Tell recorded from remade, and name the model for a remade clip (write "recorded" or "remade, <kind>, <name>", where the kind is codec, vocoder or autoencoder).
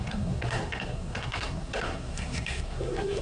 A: remade, codec, SNAC